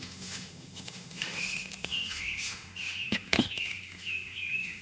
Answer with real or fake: fake